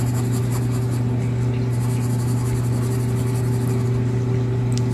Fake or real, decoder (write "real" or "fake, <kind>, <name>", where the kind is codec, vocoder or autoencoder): real